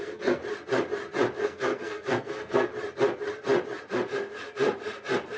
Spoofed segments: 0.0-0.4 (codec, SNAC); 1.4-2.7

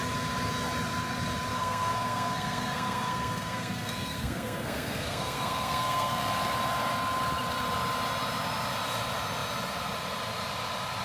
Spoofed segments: 1.5-6.3 (codec, SNAC)

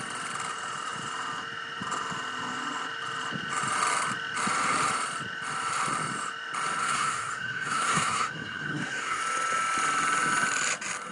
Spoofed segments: 6.8-9.2 (codec, SNAC)

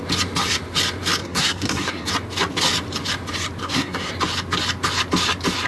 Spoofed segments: 1.2-2.1 (codec, SNAC); 3.6-4.1

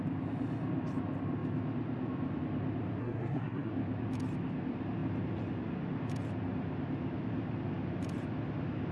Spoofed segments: 3.0-3.7 (codec, SNAC)

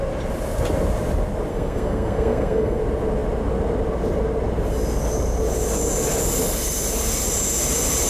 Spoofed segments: 1.5-2.8 (codec, SNAC)

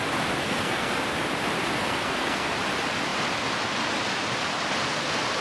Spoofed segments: 0.4-1.0 (codec, SNAC); 1.8-2.5